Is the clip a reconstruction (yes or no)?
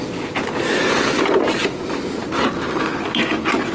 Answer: no